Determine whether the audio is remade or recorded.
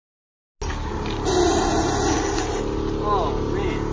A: recorded